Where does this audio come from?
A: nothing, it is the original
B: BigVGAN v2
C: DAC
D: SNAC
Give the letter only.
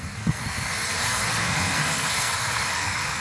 D